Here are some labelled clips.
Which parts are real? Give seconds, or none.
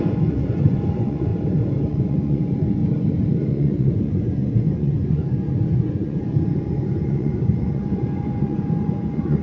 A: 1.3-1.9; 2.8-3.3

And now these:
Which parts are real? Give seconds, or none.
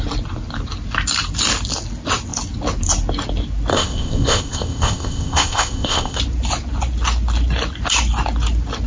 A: 0.0-3.7; 6.2-8.9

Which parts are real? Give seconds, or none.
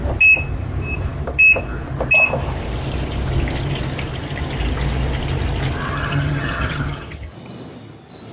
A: 0.0-5.9; 7.3-8.3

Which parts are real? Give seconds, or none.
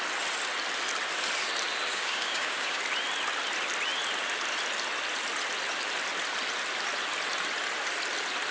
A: 0.0-1.9; 2.8-8.5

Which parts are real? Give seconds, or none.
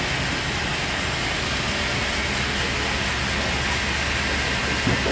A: 0.0-5.1